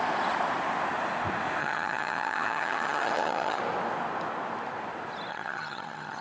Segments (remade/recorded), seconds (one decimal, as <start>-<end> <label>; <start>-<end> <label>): 0.0-1.6 recorded; 1.6-3.6 remade; 3.6-5.3 recorded; 5.3-6.2 remade